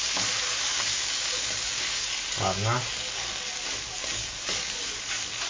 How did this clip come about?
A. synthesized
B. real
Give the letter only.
A